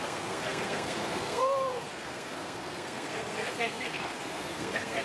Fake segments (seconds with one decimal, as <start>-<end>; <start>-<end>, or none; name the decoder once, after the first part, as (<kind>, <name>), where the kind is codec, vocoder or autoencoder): 0.0-5.0 (codec, SNAC)

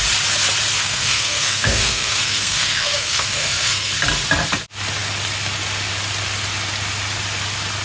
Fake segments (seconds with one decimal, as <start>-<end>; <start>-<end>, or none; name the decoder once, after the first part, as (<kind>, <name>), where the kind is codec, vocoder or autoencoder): 0.8-3.9 (codec, SNAC)

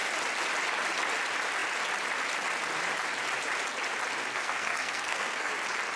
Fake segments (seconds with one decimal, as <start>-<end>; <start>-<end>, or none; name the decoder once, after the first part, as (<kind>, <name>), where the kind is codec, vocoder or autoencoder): 4.3-5.5 (codec, SNAC)

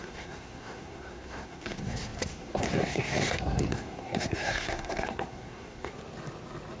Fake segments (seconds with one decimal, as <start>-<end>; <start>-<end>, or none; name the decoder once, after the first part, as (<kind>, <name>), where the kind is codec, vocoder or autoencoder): 0.0-5.9 (codec, SNAC)

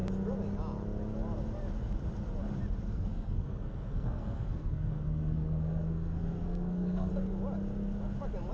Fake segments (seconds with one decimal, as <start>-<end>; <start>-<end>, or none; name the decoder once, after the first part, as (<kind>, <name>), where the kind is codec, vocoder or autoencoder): 2.9-7.1 (codec, SNAC)

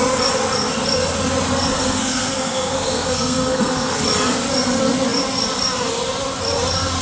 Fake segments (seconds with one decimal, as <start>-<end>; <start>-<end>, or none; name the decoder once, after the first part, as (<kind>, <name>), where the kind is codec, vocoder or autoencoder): 1.8-4.0 (codec, SNAC)

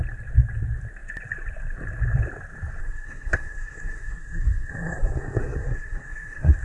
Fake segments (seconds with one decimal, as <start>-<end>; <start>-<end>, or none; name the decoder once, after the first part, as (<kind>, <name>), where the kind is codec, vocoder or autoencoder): 2.8-6.6 (codec, SNAC)